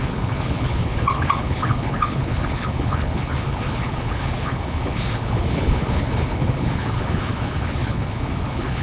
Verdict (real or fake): fake